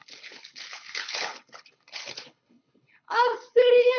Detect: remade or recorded remade